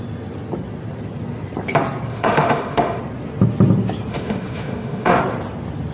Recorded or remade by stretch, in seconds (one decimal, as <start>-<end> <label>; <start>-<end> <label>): 0.0-2.1 recorded; 2.1-3.0 remade; 3.0-4.1 recorded; 4.1-5.2 remade; 5.2-5.9 recorded